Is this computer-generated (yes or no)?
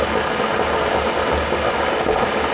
no